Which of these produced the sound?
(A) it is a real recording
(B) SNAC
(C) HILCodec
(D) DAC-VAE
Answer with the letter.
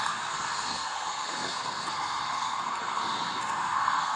B